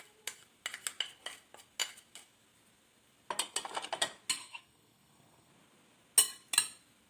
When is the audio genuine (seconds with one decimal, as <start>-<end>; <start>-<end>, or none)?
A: 0.0-4.4; 5.5-7.1